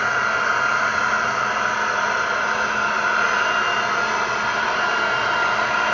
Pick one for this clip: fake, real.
real